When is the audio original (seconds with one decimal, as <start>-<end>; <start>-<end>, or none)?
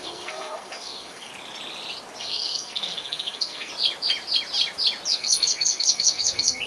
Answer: 1.3-2.2; 3.7-5.1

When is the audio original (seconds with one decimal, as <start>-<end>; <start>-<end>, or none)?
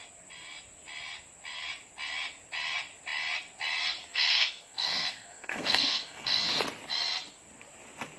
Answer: 0.0-4.0; 6.5-8.2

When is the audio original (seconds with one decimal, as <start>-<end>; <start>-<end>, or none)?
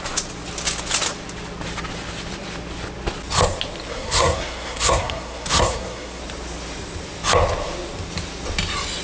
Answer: 0.0-3.9; 6.2-9.0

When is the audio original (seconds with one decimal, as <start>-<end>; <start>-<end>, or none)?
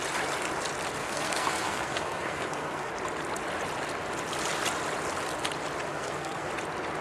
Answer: 0.0-1.0; 2.9-5.9; 6.5-7.0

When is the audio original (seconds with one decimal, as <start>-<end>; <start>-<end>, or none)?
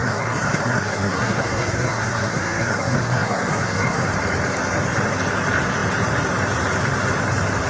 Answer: 4.1-7.7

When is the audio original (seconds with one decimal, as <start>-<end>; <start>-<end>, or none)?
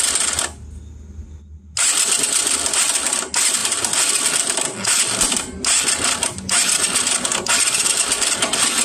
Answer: 0.0-8.8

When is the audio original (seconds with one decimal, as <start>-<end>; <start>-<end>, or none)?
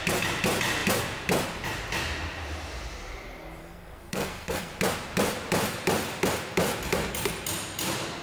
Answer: 0.0-3.6; 4.7-8.2